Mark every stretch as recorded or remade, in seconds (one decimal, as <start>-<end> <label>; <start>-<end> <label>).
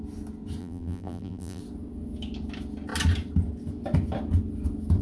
0.0-0.6 recorded; 0.6-1.6 remade; 1.6-5.0 recorded